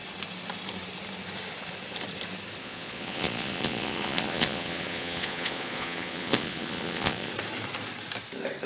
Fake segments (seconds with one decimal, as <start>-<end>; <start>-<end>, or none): 2.6-7.3

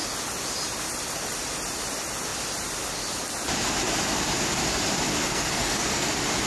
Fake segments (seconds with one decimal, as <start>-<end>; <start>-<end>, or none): 5.1-6.1

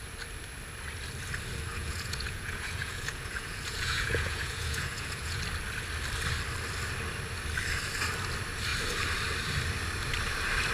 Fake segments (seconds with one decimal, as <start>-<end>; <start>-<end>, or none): 1.7-5.4

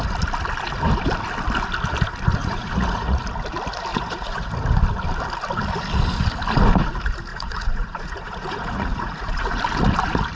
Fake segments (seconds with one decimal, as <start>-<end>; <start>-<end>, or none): 2.4-3.2; 3.9-4.5; 7.3-9.6

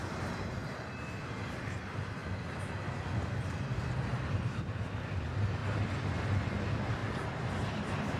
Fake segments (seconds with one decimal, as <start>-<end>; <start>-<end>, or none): 0.0-0.6; 1.2-2.2; 3.5-5.6; 6.5-7.0; 7.6-8.2

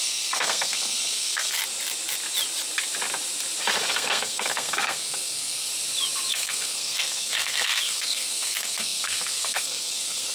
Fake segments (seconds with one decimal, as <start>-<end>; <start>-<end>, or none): 0.0-1.6; 3.9-5.7; 6.3-10.3